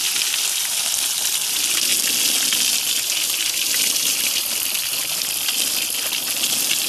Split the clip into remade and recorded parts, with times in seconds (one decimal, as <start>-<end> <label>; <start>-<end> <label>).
0.0-6.9 recorded